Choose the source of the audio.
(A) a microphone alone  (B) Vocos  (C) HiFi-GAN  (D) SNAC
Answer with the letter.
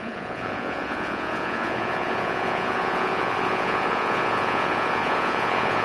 B